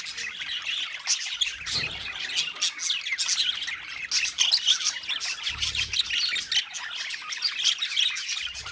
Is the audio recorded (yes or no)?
yes